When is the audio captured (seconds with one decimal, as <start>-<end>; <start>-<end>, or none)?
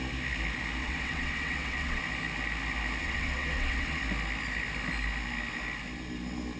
0.0-0.8; 2.0-3.0; 4.0-6.6